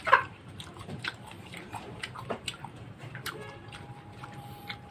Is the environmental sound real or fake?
fake